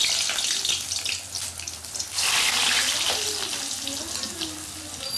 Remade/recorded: recorded